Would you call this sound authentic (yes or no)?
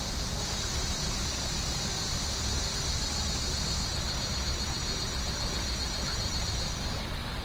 yes